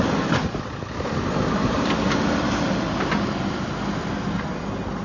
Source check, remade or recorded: recorded